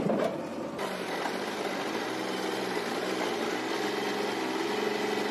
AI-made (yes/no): no